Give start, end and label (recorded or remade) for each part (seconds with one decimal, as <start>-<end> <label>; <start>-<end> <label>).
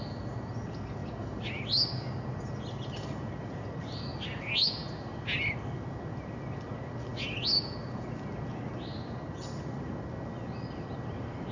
0.0-1.0 recorded; 1.0-1.6 remade; 1.6-11.5 recorded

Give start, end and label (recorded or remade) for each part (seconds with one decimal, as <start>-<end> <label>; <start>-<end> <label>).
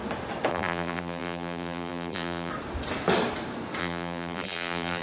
0.0-0.5 recorded; 0.5-2.5 remade; 2.5-3.8 recorded; 3.8-5.0 remade